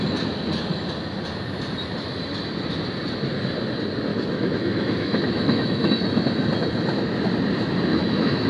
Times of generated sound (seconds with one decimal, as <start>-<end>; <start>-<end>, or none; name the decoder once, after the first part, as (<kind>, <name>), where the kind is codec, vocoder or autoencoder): 4.1-5.9 (autoencoder, DAC-VAE); 7.9-8.5

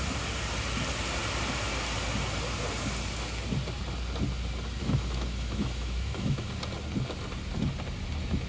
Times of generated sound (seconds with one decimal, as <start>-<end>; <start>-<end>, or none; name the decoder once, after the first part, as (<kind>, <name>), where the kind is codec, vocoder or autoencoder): 4.8-6.5 (autoencoder, DAC-VAE)

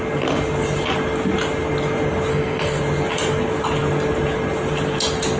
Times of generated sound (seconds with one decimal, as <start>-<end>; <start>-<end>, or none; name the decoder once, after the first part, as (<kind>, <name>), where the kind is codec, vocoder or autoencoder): 2.3-2.8 (codec, SNAC)

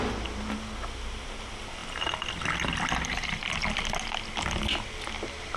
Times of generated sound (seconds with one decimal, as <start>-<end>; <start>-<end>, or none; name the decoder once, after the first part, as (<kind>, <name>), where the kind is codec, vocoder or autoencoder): none

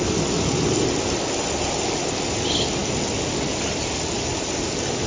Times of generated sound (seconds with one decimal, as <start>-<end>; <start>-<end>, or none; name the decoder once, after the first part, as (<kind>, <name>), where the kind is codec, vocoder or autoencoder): none